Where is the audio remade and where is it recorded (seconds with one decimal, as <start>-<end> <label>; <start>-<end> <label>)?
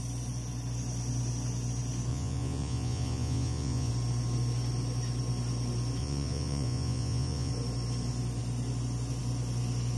0.0-2.1 recorded; 2.1-3.9 remade; 3.9-6.0 recorded; 6.0-7.5 remade; 7.5-10.0 recorded